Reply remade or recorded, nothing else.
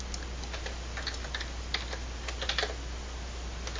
recorded